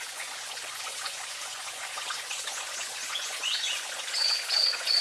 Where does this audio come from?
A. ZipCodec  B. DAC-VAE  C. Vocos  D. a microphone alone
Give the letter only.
C